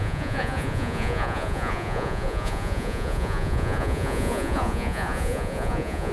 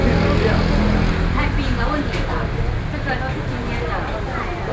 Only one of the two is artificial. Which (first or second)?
first